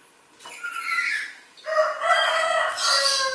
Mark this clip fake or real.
real